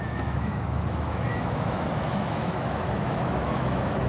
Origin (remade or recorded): remade